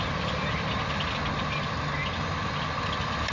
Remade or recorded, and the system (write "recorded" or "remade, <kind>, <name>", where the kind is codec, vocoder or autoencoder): recorded